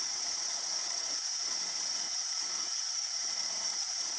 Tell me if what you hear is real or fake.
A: fake